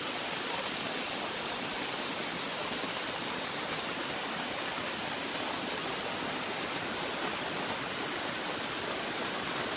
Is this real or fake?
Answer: real